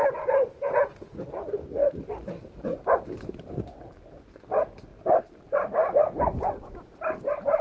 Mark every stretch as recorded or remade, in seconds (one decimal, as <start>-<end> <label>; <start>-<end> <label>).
0.0-1.8 recorded; 1.8-4.2 remade; 4.2-4.9 recorded; 4.9-7.6 remade